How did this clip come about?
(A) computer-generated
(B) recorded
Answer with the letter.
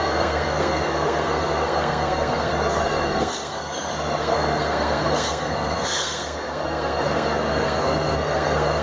A